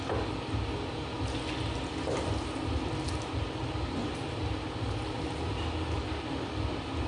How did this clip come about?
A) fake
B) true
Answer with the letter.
B